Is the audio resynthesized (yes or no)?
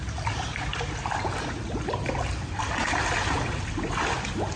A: no